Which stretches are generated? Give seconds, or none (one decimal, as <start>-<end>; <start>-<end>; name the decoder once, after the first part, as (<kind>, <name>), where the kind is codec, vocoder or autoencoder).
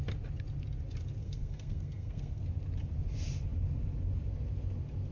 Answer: 1.2-2.4 (codec, SNAC)